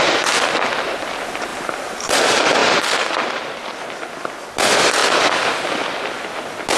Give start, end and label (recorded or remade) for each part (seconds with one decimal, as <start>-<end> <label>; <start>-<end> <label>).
0.0-1.5 recorded; 1.5-2.2 remade; 2.2-2.6 recorded; 2.6-3.5 remade; 3.5-6.8 recorded

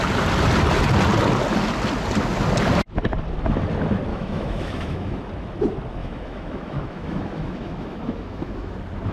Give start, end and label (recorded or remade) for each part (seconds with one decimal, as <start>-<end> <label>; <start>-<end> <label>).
0.0-4.1 recorded; 4.1-5.2 remade; 5.2-6.0 recorded; 6.0-8.7 remade; 8.7-9.1 recorded

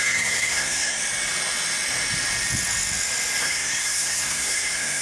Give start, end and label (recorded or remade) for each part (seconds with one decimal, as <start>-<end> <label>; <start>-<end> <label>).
0.0-1.0 remade; 1.0-3.4 recorded; 3.4-5.0 remade

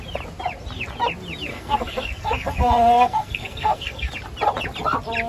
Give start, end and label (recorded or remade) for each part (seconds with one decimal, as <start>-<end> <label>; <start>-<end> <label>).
0.0-1.5 recorded; 1.5-4.1 remade; 4.1-5.3 recorded

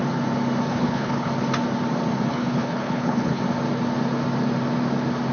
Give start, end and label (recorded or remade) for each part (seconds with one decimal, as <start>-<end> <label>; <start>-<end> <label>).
0.0-0.7 recorded; 0.7-1.3 remade; 1.3-2.3 recorded; 2.3-3.4 remade; 3.4-5.3 recorded

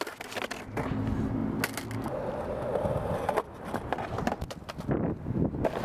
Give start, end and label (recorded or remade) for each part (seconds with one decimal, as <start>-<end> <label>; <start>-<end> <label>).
0.0-5.8 recorded

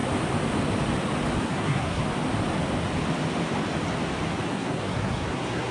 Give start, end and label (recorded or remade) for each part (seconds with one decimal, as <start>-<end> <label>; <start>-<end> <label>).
0.0-1.4 recorded; 1.4-2.0 remade; 2.0-4.5 recorded; 4.5-5.7 remade

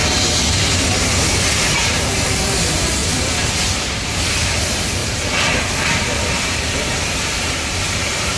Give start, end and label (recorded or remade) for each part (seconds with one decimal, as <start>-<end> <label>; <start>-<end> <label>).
0.0-0.6 recorded; 0.6-3.0 remade; 3.0-3.7 recorded; 3.7-8.4 remade